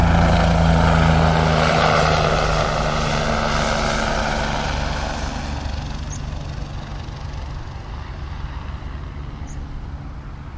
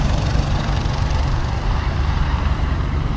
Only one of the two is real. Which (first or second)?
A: first